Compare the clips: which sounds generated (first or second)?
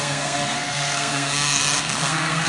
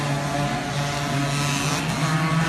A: first